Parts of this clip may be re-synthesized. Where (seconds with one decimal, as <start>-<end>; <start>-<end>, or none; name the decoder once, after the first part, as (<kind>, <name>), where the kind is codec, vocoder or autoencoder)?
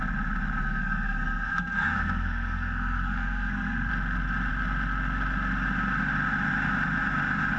0.6-3.9 (codec, SNAC)